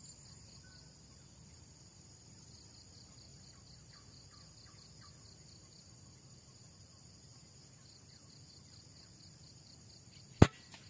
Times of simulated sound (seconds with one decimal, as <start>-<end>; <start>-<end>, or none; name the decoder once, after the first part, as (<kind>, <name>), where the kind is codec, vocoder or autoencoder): none